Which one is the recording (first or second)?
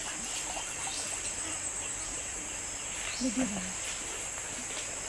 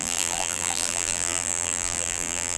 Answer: first